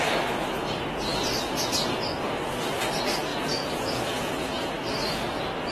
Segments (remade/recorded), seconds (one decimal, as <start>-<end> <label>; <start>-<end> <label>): 0.0-3.3 recorded; 3.3-4.7 remade; 4.7-5.7 recorded